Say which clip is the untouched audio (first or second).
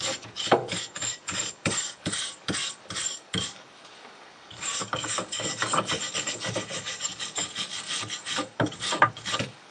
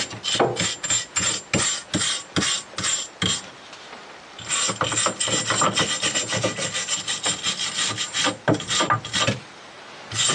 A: second